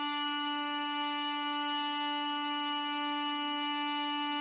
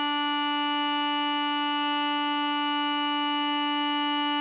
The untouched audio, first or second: second